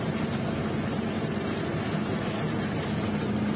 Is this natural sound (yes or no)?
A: yes